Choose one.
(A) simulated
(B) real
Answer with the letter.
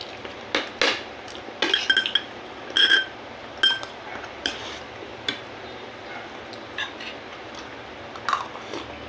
B